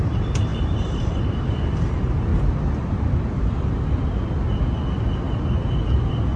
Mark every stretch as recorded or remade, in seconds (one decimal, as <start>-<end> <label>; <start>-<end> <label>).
0.0-2.3 remade; 2.3-6.4 recorded